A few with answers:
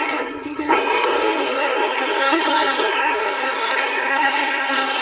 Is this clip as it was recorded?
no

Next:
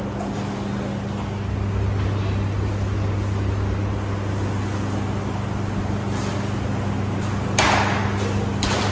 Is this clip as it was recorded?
yes